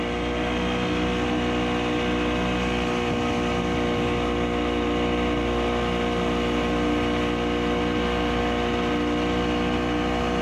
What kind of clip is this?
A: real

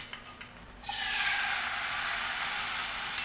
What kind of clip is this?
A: real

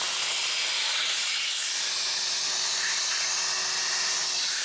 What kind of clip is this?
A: real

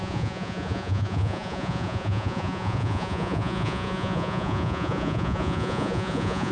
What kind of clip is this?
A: fake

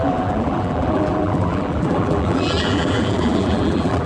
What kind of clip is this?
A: fake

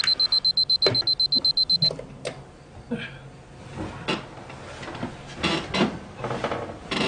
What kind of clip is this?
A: real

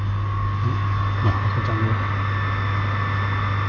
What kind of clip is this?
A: real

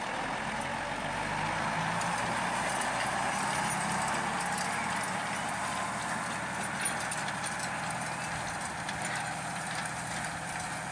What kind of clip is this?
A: real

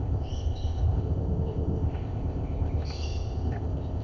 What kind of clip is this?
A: fake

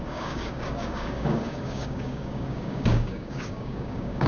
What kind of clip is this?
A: fake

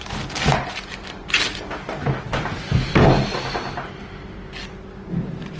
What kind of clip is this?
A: real